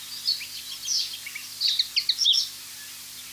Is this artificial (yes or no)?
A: no